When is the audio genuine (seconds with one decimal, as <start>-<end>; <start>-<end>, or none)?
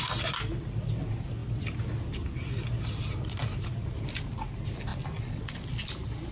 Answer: 0.0-6.3